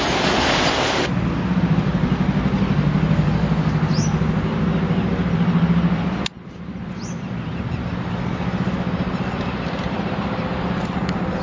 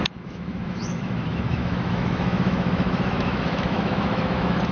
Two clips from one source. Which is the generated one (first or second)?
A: second